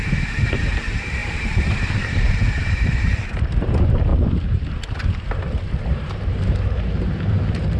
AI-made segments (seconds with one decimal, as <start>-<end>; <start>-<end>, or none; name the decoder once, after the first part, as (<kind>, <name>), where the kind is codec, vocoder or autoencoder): 0.0-4.1 (vocoder, BigVGAN v2); 5.8-7.8